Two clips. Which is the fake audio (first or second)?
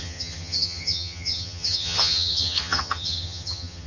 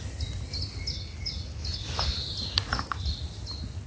first